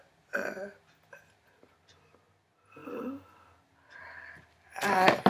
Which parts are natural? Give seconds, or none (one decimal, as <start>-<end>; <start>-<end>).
0.0-5.3